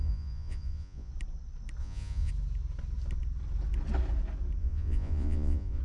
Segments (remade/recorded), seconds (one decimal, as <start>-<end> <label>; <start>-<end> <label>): 0.0-1.1 remade; 1.1-1.8 recorded; 1.8-2.3 remade; 2.3-4.6 recorded; 4.6-5.8 remade